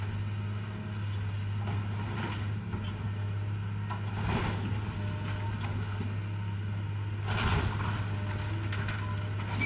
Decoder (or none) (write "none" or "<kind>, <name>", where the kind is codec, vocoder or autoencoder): none